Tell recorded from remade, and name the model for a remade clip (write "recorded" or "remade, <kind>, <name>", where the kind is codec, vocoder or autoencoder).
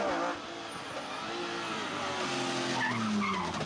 recorded